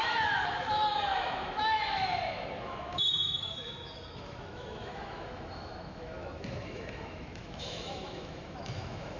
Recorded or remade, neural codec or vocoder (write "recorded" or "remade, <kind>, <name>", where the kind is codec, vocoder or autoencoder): remade, autoencoder, DAC-VAE